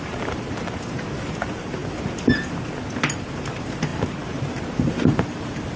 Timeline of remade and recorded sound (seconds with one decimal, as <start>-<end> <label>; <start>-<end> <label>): 0.0-1.8 remade; 1.8-3.3 recorded; 3.3-5.8 remade